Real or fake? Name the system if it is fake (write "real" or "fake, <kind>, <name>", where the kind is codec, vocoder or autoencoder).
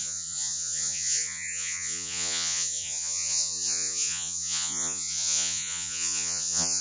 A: fake, vocoder, Vocos